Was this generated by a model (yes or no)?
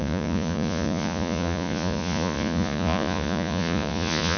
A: yes